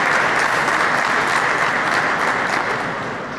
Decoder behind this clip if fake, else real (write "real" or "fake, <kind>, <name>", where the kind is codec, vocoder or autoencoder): real